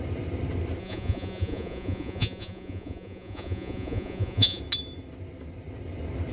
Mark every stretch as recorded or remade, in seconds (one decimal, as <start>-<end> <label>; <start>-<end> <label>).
0.0-0.8 recorded; 0.8-4.6 remade; 4.6-6.3 recorded